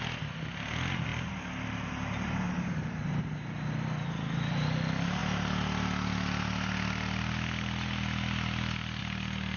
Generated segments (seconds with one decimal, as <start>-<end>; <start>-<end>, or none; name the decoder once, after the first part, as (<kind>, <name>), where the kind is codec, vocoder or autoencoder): none